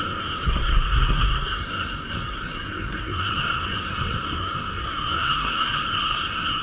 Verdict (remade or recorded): remade